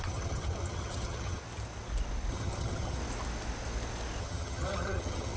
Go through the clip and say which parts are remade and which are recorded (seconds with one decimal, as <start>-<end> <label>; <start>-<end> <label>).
0.0-1.4 remade; 1.4-2.3 recorded; 2.3-3.0 remade; 3.0-4.2 recorded; 4.2-5.4 remade

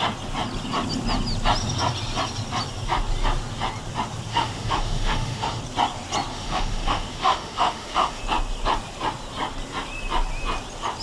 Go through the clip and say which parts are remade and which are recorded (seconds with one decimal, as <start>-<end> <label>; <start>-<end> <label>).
0.0-4.3 recorded; 4.3-5.6 remade; 5.6-6.3 recorded; 6.3-8.2 remade; 8.2-11.0 recorded